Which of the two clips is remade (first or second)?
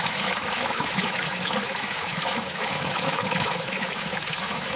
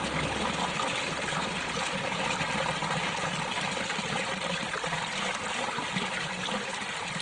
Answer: first